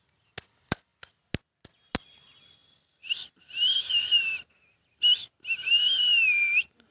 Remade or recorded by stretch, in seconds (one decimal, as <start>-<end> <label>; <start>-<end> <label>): 0.0-6.9 recorded